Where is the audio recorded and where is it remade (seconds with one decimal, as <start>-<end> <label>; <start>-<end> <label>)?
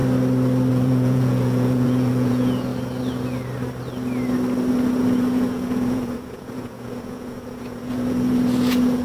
0.0-0.7 recorded; 0.7-2.7 remade; 2.7-4.7 recorded; 4.7-9.0 remade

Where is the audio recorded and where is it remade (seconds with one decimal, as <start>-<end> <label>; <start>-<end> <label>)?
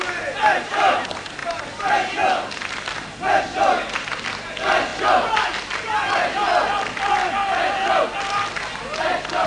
0.0-9.5 recorded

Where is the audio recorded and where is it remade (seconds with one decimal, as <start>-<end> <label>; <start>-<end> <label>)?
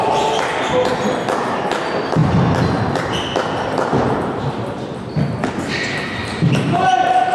0.0-7.3 recorded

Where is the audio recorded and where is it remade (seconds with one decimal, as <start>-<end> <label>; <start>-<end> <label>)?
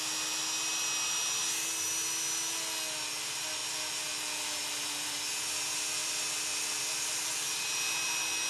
0.0-6.0 recorded; 6.0-7.3 remade; 7.3-8.5 recorded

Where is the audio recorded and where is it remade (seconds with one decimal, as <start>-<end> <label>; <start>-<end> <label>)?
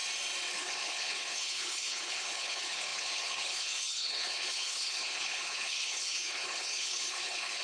0.0-0.5 recorded; 0.5-7.6 remade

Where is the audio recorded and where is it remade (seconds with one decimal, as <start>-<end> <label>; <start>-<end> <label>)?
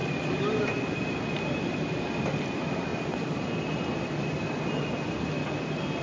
0.0-6.0 recorded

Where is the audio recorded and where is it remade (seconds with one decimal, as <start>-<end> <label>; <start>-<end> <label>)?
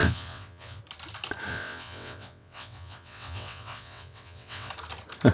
0.0-0.8 remade; 0.8-1.5 recorded; 1.5-4.7 remade; 4.7-5.3 recorded